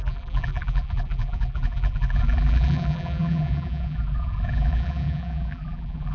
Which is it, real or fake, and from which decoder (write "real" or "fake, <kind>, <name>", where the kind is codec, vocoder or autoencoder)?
fake, vocoder, BigVGAN v2